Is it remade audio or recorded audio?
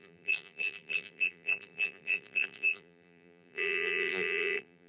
remade